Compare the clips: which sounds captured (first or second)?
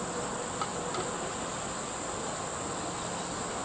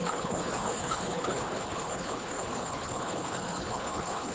first